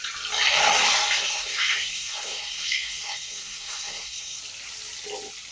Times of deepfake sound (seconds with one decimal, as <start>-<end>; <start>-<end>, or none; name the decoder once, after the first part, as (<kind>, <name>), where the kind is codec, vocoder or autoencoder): 1.2-4.4 (codec, SNAC)